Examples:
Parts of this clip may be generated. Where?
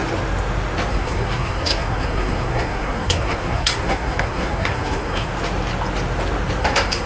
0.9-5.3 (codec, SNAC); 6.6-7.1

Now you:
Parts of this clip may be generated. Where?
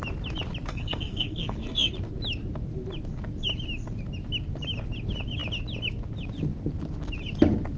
0.7-1.9 (codec, SNAC)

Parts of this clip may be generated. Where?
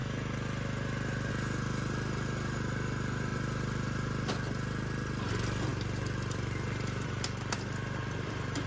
3.3-4.3 (vocoder, BigVGAN v2); 5.7-8.7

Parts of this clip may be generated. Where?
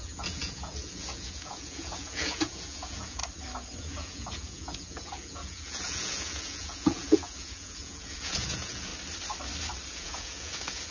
0.0-3.2 (vocoder, Vocos); 3.8-8.9; 9.9-10.9